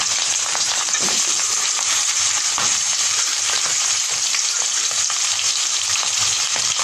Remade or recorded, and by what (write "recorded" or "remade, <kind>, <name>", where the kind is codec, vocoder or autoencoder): remade, vocoder, BigVGAN v2